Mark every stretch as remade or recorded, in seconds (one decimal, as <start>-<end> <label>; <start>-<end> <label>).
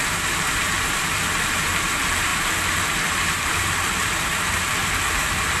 0.0-5.6 remade